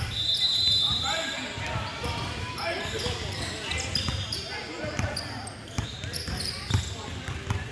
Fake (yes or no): yes